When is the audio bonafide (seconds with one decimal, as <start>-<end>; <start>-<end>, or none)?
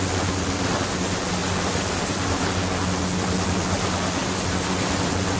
0.0-4.2; 4.7-5.4